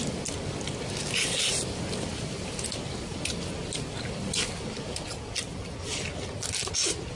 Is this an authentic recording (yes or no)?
yes